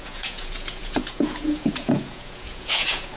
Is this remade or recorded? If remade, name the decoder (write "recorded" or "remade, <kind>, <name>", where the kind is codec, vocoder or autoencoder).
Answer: remade, vocoder, Vocos